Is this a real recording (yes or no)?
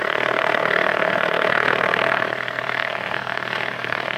no